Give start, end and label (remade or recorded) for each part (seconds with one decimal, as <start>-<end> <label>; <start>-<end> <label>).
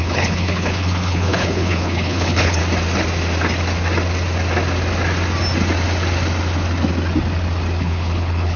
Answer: 0.0-2.6 remade; 2.6-7.8 recorded; 7.8-8.6 remade